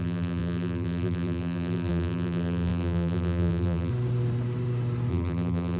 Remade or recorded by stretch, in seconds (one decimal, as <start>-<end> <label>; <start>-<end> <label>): 0.0-3.9 remade; 3.9-5.1 recorded; 5.1-5.8 remade

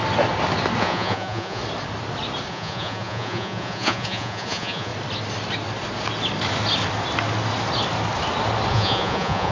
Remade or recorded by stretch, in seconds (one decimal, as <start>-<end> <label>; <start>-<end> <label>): 0.0-0.8 recorded; 0.8-1.6 remade; 1.6-2.5 recorded; 2.5-4.9 remade; 4.9-8.7 recorded; 8.7-9.5 remade

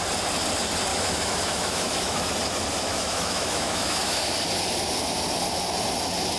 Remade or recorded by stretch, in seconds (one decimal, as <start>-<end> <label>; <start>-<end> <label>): 0.0-0.9 recorded; 0.9-2.3 remade; 2.3-2.9 recorded; 2.9-4.3 remade; 4.3-6.4 recorded